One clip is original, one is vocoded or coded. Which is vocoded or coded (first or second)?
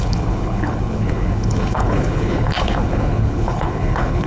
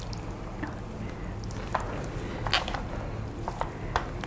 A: first